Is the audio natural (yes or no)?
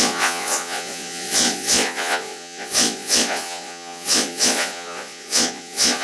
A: no